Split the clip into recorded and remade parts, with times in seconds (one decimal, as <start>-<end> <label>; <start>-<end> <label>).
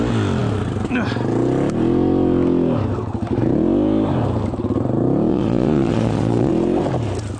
0.0-5.3 recorded; 5.3-6.5 remade; 6.5-7.4 recorded